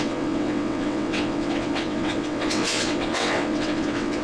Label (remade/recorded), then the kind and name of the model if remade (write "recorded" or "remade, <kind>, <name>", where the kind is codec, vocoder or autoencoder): remade, vocoder, WaveNeXt